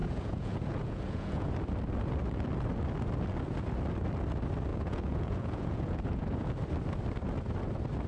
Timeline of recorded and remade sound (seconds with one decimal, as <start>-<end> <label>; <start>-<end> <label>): 0.0-1.5 remade; 1.5-4.7 recorded; 4.7-6.5 remade; 6.5-8.1 recorded